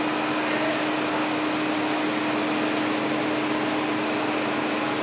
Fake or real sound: real